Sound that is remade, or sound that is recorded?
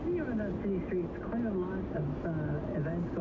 recorded